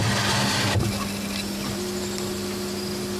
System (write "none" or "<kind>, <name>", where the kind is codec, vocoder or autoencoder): none